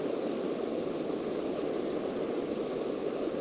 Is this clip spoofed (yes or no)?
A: no